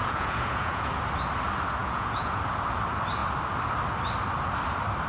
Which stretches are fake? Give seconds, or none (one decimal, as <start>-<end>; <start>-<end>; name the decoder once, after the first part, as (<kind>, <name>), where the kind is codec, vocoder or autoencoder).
0.0-0.9 (vocoder, Vocos); 1.8-2.4